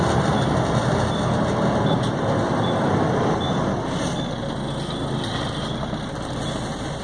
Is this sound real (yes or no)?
yes